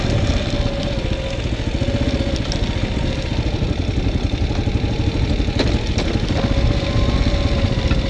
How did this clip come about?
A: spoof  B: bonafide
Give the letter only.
B